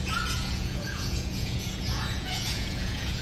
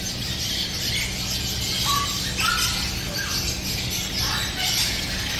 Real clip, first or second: second